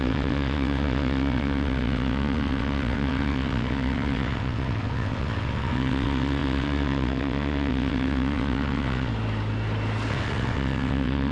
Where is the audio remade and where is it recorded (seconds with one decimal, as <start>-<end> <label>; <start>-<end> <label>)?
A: 0.0-9.1 remade; 9.1-10.1 recorded; 10.1-11.3 remade